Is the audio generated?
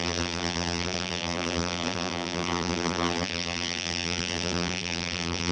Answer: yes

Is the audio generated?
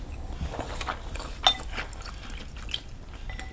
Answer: no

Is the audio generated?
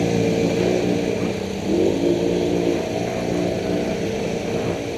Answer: no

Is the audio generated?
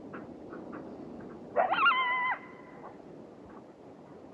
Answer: no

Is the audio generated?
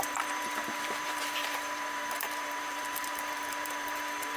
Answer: yes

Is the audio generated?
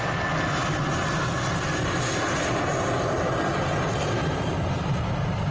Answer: no